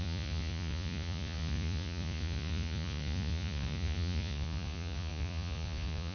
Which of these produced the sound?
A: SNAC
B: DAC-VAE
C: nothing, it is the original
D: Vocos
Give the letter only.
D